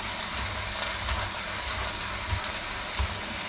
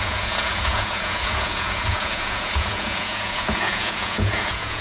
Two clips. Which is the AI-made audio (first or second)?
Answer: second